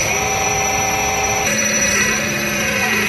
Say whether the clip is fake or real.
fake